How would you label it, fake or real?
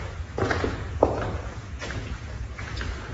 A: fake